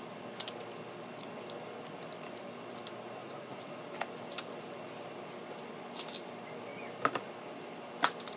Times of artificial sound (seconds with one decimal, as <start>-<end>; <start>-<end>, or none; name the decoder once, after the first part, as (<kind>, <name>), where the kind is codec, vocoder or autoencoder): 3.2-3.8 (vocoder, Vocos)

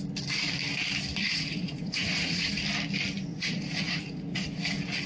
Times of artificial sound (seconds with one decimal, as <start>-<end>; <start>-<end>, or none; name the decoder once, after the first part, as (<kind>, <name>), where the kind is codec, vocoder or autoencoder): 1.2-2.5 (vocoder, Vocos); 3.3-4.6

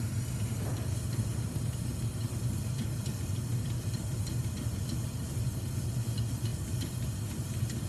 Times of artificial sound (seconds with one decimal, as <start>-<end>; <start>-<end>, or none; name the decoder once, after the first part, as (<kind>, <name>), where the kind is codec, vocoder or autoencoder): none

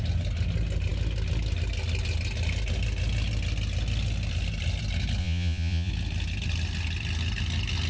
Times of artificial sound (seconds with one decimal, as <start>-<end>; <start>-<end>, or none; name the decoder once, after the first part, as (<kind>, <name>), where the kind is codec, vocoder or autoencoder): 5.2-5.9 (vocoder, Vocos)

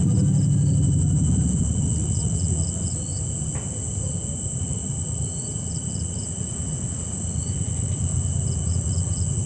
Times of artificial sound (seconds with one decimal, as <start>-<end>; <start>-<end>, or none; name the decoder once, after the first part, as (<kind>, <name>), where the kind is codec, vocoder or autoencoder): 1.6-3.1 (vocoder, Vocos); 4.6-8.1; 8.7-9.5